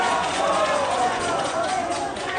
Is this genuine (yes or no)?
no